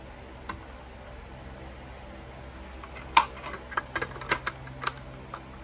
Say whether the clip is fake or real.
real